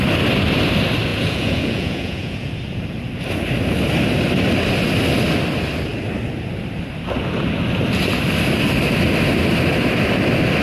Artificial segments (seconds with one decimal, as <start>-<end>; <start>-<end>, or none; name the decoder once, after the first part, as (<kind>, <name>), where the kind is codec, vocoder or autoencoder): 1.1-2.5 (vocoder, Vocos)